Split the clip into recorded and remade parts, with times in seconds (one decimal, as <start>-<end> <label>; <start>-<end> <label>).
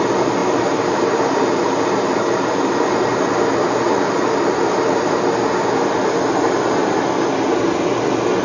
0.0-0.4 recorded; 0.4-5.1 remade; 5.1-8.4 recorded